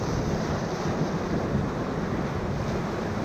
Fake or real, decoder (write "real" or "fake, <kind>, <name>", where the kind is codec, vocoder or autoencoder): real